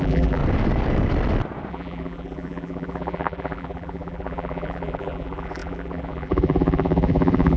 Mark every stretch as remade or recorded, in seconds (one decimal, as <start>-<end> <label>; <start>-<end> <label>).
0.0-0.4 remade; 0.4-1.7 recorded; 1.7-7.6 remade